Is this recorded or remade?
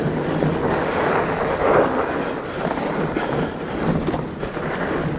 recorded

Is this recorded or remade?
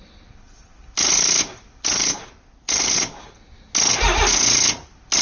recorded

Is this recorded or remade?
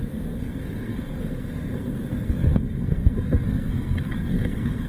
remade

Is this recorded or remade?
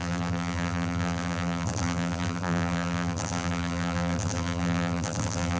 remade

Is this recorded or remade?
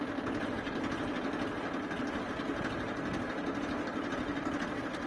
recorded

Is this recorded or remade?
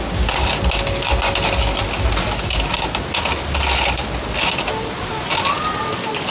recorded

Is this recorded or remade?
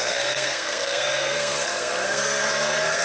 remade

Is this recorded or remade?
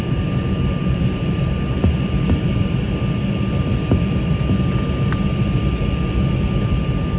recorded